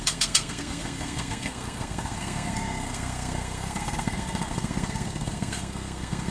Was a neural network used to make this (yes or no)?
yes